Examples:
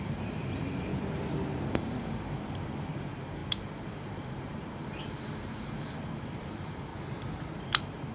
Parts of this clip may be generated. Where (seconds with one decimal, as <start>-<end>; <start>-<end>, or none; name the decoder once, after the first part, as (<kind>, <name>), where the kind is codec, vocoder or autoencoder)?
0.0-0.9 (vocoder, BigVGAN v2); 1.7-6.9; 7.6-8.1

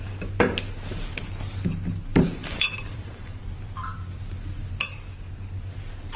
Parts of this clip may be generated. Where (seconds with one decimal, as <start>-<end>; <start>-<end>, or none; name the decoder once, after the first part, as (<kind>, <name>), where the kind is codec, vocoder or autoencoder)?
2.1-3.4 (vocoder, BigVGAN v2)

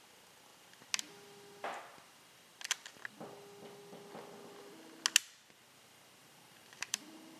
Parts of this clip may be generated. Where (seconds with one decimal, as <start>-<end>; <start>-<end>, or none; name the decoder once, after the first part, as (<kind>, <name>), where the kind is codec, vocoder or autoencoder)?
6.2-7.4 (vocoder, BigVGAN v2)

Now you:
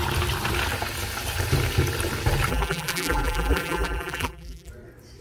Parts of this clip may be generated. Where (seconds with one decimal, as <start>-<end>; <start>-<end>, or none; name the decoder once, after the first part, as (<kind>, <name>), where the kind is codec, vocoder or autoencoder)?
2.5-4.7 (vocoder, BigVGAN v2)

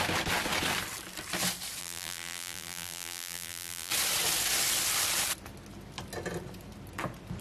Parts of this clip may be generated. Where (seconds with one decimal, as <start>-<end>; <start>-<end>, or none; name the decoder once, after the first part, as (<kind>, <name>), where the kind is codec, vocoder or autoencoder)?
1.8-3.9 (vocoder, BigVGAN v2)

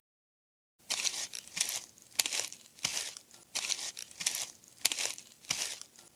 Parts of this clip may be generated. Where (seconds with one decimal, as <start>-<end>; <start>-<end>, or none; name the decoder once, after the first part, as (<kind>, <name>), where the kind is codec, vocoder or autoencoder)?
0.4-1.6 (vocoder, BigVGAN v2)

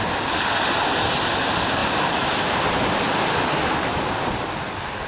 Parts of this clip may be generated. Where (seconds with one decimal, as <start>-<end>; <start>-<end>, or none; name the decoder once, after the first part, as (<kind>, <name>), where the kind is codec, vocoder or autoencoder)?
1.8-2.9 (vocoder, BigVGAN v2)

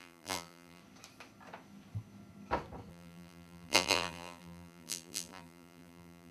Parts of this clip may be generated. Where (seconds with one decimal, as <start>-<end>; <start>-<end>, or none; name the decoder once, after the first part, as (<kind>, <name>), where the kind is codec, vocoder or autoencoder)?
0.0-0.8 (vocoder, BigVGAN v2); 2.9-6.3